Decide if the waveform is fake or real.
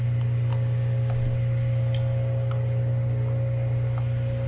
real